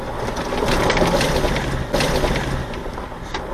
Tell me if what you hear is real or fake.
real